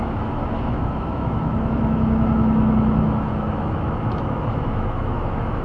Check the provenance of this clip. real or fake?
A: fake